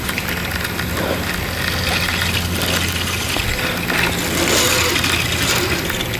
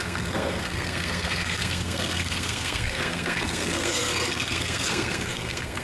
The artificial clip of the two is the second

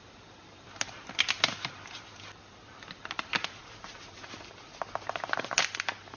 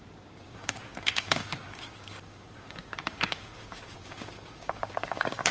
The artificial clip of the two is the second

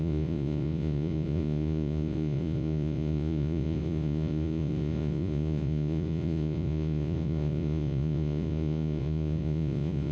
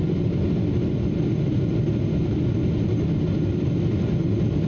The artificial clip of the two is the first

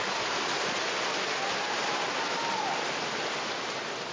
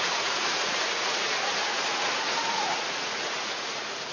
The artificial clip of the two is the second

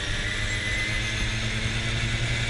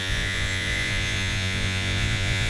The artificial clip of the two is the second